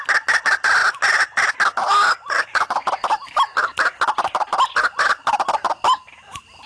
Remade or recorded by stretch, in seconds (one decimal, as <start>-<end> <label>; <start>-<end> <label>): 0.0-6.7 recorded